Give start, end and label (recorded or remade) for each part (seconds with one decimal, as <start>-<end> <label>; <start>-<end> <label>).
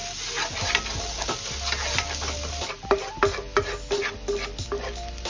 0.0-5.3 recorded